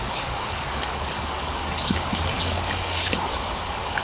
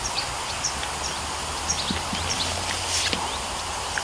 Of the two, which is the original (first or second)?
second